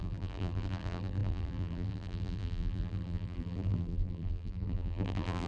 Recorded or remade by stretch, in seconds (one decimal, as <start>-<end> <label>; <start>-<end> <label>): 0.0-5.5 remade